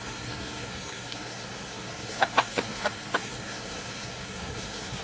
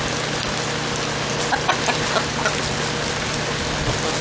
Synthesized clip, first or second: first